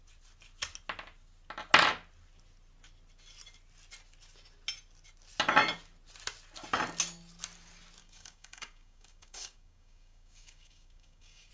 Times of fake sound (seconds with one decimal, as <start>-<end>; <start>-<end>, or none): 8.0-11.5